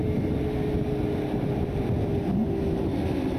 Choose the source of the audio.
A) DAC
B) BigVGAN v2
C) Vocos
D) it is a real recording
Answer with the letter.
D